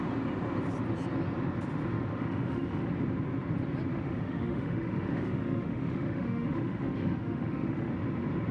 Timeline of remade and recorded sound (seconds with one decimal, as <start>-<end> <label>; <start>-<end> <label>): 0.0-1.9 recorded; 1.9-2.9 remade; 2.9-3.9 recorded; 3.9-7.9 remade; 7.9-8.5 recorded